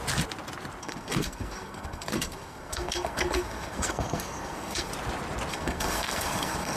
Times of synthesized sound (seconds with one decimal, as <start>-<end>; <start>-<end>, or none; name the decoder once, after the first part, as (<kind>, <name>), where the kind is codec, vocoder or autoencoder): 0.8-4.9 (codec, SNAC); 5.5-6.8